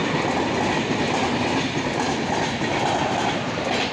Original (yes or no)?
yes